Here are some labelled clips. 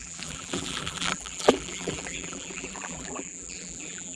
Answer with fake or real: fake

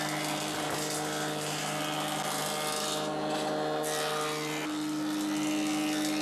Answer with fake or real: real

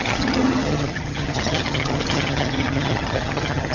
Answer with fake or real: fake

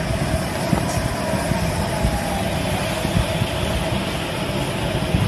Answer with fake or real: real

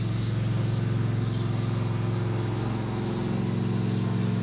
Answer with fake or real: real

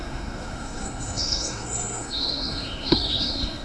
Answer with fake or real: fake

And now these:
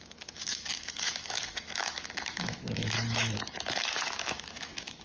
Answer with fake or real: fake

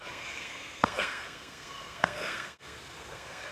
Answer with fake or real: fake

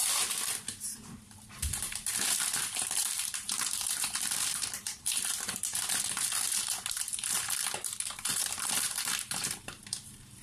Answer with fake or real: fake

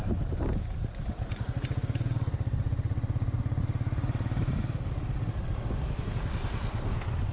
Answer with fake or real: real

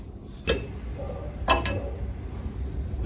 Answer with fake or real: real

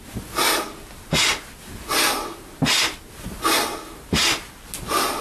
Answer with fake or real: real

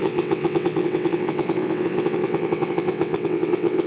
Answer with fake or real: fake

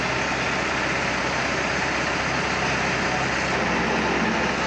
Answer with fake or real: real